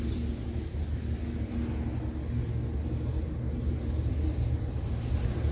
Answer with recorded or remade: recorded